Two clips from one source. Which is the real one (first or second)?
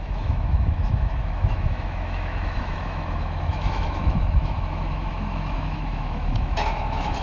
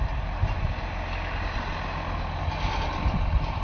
second